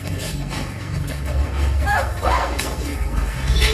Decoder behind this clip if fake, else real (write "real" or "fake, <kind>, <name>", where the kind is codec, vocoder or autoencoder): fake, codec, SNAC